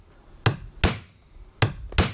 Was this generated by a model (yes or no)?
no